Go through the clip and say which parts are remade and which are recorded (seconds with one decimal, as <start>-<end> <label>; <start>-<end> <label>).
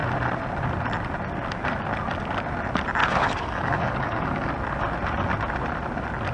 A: 0.0-3.0 recorded; 3.0-4.5 remade; 4.5-6.3 recorded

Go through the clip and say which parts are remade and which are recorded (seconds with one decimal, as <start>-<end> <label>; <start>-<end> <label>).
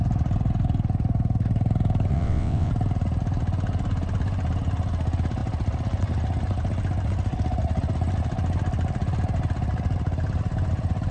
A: 0.0-2.1 recorded; 2.1-2.7 remade; 2.7-11.1 recorded